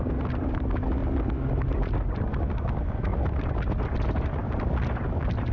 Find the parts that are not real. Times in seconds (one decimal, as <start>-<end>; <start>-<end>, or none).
0.0-1.0; 1.5-5.5